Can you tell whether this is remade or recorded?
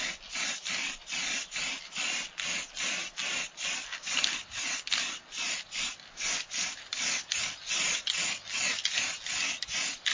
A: recorded